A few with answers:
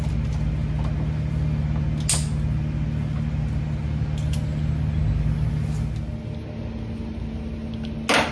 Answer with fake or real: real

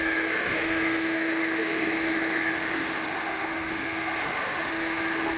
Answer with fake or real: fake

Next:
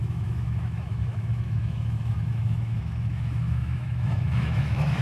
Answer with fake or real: fake